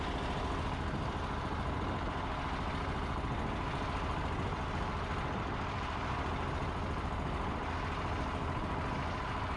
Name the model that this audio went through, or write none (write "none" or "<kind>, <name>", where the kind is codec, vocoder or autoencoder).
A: none